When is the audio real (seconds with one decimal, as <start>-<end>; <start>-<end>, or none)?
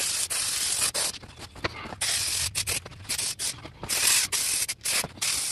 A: none